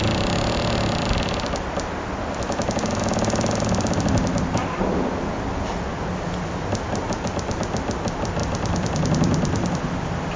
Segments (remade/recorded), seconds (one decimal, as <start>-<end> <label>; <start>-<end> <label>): 0.0-10.4 recorded